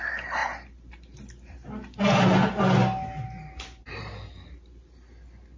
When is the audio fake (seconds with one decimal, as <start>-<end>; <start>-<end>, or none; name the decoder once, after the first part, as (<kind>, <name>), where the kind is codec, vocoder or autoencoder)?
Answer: none